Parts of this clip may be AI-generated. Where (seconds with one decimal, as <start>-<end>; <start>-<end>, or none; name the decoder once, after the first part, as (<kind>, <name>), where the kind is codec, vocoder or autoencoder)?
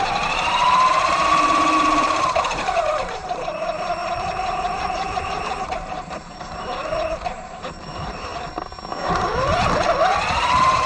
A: 0.0-8.3 (vocoder, BigVGAN v2); 10.1-10.9